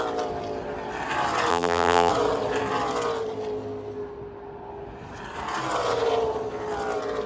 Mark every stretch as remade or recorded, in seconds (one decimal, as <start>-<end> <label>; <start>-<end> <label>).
0.0-1.5 recorded; 1.5-2.1 remade; 2.1-7.3 recorded